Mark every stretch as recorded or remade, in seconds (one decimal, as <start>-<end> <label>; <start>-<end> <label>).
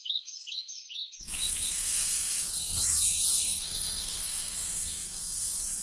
0.0-5.8 remade